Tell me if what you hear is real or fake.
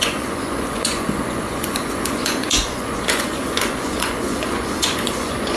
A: fake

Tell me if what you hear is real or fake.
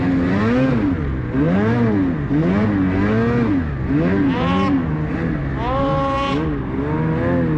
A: real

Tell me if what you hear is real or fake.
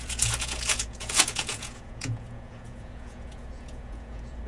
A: fake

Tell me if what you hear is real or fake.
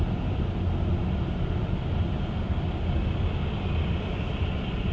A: real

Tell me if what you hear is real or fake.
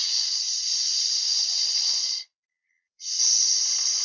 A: fake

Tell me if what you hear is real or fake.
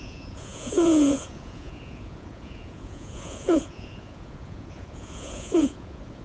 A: fake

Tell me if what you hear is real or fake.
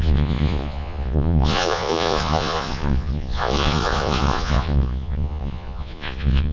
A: fake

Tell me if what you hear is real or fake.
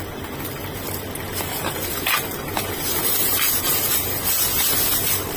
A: real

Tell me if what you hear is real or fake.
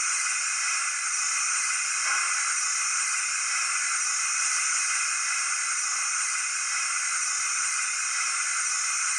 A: real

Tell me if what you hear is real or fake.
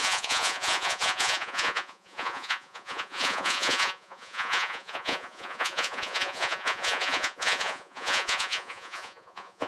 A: fake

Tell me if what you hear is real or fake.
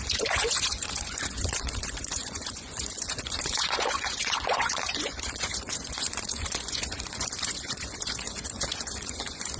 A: fake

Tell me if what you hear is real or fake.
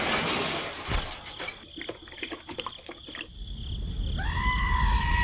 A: real